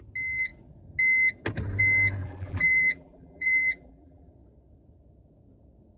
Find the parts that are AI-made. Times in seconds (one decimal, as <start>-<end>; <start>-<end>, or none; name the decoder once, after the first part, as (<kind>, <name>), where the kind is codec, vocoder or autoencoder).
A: 2.2-4.3 (vocoder, BigVGAN v2)